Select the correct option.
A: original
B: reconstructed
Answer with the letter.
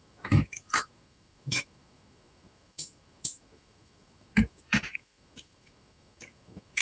B